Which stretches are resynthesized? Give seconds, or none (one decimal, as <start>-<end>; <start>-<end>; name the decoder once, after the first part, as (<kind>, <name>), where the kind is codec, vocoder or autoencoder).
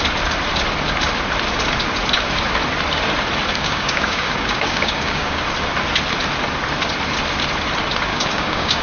3.5-5.4 (codec, DAC); 8.1-8.8